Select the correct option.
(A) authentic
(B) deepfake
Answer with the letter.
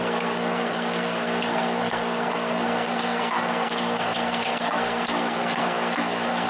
B